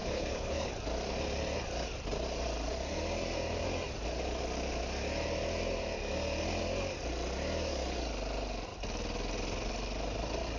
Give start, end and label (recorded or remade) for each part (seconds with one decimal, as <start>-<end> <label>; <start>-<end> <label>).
0.0-0.7 remade; 0.7-10.6 recorded